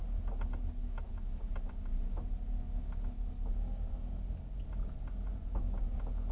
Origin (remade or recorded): recorded